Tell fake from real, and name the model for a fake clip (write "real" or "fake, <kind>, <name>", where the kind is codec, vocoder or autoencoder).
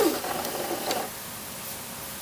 real